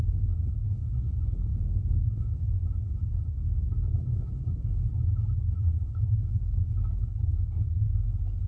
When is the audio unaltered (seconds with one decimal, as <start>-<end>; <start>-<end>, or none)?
none